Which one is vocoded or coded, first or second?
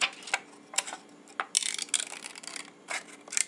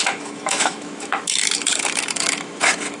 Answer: second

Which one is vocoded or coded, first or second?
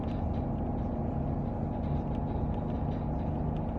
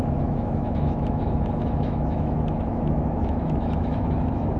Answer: second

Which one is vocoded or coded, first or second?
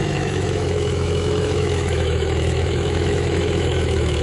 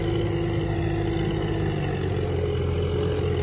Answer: first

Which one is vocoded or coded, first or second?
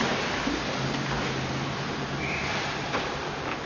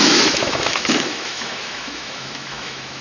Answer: second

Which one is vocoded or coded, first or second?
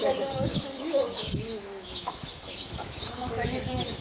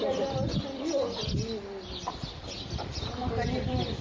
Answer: first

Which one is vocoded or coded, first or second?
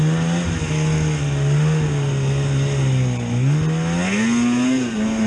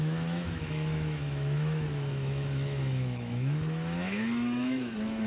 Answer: second